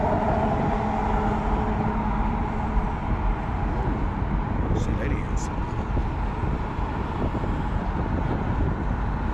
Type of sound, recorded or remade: recorded